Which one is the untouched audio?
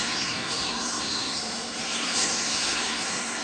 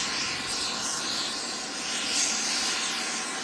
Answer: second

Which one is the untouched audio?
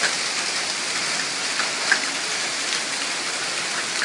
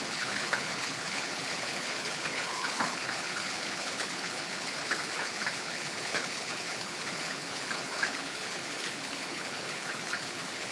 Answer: first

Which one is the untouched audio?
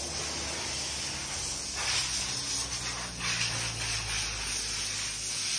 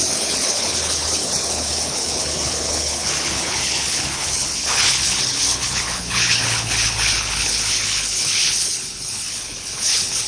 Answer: first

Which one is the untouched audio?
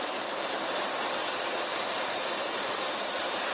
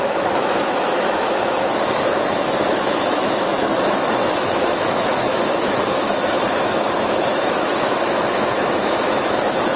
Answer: first